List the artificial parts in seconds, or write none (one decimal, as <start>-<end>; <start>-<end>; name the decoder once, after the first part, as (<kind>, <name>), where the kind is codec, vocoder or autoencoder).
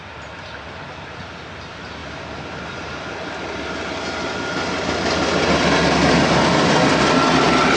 none